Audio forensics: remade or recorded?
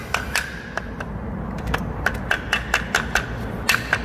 recorded